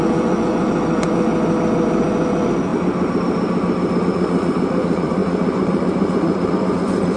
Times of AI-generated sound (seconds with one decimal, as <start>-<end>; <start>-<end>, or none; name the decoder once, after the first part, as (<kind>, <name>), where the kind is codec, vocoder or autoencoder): 0.0-1.3 (vocoder, Vocos); 2.0-2.7; 4.0-7.2